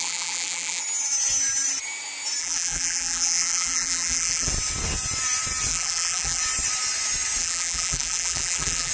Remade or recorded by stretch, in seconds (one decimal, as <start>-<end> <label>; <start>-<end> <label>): 0.0-0.8 remade; 0.8-2.4 recorded; 2.4-4.5 remade; 4.5-5.7 recorded; 5.7-6.4 remade; 6.4-7.4 recorded; 7.4-8.9 remade